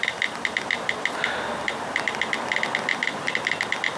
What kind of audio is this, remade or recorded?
recorded